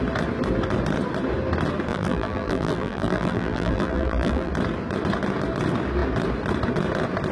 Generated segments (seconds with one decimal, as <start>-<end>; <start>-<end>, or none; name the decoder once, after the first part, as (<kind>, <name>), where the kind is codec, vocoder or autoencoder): 1.9-4.5 (vocoder, BigVGAN v2)